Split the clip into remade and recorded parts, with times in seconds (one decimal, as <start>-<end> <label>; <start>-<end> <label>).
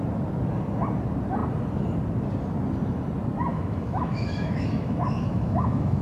0.0-3.5 recorded; 3.5-6.0 remade